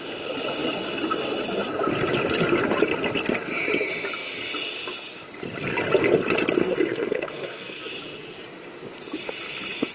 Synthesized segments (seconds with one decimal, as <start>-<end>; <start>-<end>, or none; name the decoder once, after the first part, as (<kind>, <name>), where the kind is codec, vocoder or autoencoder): 6.6-7.9 (codec, SNAC)